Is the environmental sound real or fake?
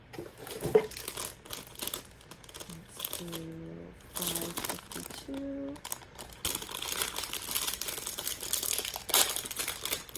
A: real